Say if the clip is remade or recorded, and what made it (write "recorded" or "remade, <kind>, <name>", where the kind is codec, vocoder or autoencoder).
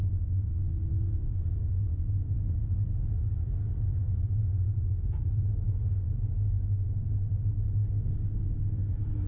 recorded